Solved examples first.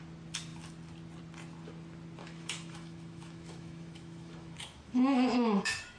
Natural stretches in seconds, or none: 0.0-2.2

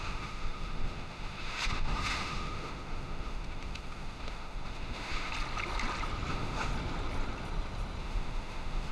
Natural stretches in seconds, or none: 5.3-6.3; 6.7-8.0